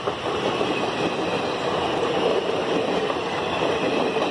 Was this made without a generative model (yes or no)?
yes